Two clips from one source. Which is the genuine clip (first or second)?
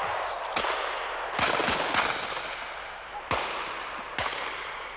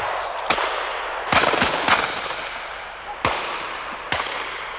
first